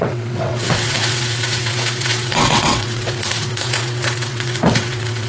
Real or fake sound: fake